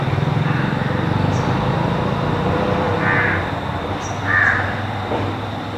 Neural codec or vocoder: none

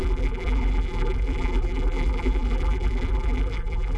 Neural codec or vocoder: vocoder, BigVGAN v2